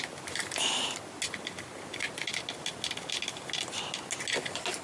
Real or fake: real